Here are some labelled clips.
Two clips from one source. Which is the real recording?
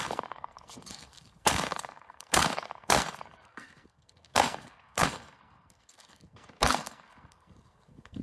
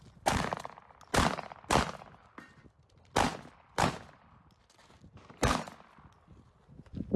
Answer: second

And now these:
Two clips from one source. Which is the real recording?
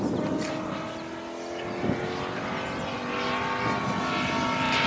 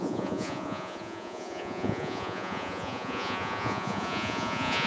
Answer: first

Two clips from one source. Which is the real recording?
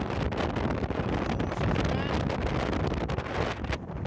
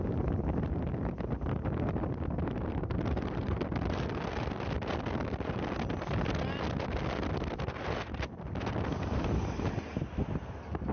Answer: first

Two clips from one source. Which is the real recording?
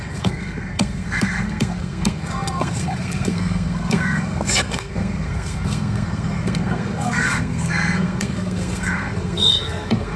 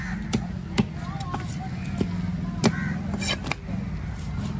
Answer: second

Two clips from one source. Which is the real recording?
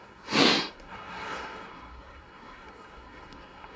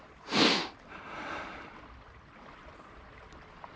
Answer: second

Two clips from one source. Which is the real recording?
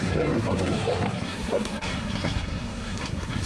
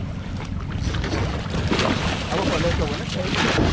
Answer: second